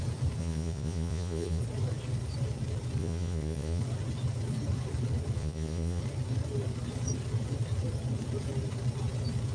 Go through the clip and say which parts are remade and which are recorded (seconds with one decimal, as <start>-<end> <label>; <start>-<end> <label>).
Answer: 0.0-0.4 recorded; 0.4-1.6 remade; 1.6-3.0 recorded; 3.0-3.8 remade; 3.8-5.4 recorded; 5.4-6.0 remade; 6.0-9.5 recorded

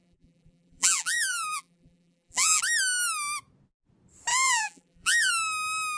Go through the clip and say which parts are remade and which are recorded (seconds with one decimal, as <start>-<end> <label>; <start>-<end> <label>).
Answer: 0.0-2.6 remade; 2.6-4.3 recorded; 4.3-5.3 remade; 5.3-6.0 recorded

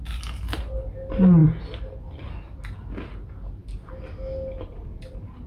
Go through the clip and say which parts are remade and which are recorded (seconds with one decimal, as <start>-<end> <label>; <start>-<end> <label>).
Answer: 0.0-5.5 recorded

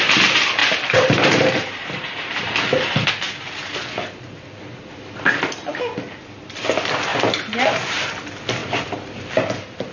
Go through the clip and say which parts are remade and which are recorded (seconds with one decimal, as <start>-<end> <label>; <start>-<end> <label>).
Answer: 0.0-0.6 recorded; 0.6-3.1 remade; 3.1-7.1 recorded; 7.1-8.0 remade; 8.0-8.6 recorded; 8.6-9.3 remade; 9.3-9.9 recorded